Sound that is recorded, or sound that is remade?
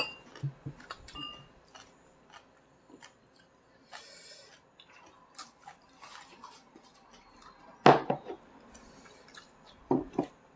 recorded